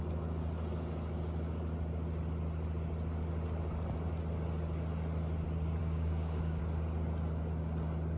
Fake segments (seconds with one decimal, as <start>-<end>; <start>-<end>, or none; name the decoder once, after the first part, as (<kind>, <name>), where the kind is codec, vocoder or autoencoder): 5.8-6.6 (codec, DAC)